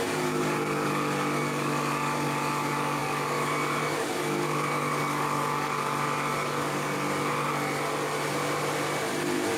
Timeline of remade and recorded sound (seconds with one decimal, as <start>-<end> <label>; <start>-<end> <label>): 0.0-7.5 remade; 7.5-9.6 recorded